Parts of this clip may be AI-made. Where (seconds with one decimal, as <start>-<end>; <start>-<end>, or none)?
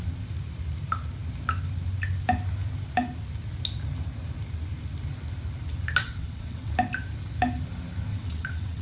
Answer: 6.0-6.7; 8.1-8.8